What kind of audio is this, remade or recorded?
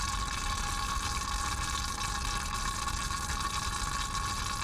recorded